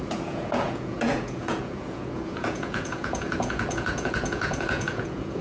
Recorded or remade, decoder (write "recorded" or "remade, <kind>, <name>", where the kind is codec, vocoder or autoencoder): remade, vocoder, Vocos